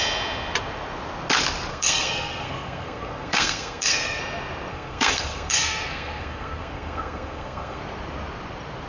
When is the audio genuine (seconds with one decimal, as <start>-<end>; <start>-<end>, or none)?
0.0-1.7; 4.2-4.7; 7.8-8.9

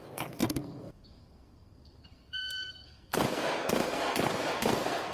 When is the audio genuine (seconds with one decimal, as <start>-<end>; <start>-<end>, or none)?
none

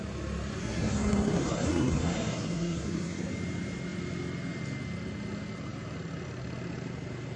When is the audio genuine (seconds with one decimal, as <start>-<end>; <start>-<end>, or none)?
0.0-0.6; 3.3-7.4

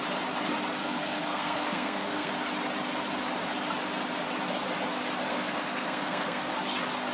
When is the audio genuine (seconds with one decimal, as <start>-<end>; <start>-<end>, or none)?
0.0-0.8; 2.3-5.3; 6.5-7.1

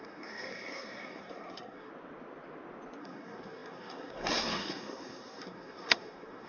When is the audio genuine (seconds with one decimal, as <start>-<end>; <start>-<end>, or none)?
1.9-3.0

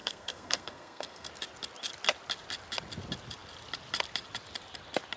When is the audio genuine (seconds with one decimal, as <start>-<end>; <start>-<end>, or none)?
1.3-5.2